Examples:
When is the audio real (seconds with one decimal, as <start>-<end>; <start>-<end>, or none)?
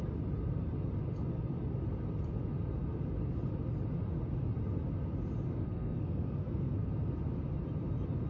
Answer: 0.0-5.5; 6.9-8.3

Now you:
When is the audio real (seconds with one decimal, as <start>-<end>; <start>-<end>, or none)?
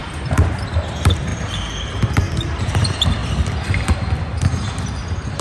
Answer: 1.3-2.6; 3.2-4.2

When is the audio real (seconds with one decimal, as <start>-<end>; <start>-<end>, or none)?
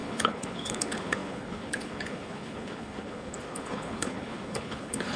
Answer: none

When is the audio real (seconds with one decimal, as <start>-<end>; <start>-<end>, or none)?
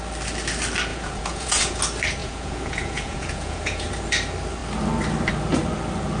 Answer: 0.0-0.9; 1.8-2.2; 3.9-6.2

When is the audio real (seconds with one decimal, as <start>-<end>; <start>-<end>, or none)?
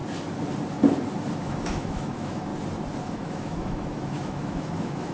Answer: 0.0-1.4; 2.5-3.0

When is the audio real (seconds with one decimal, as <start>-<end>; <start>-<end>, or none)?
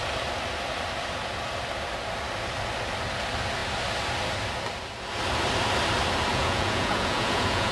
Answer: 0.0-6.3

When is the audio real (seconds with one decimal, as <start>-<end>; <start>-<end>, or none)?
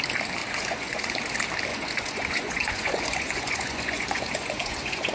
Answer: 0.0-0.4; 1.2-1.7